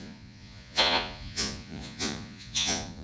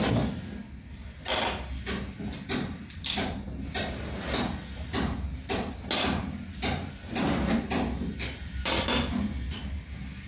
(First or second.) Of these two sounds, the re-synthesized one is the first